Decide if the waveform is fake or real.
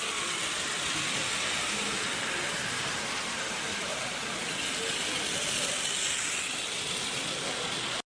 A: real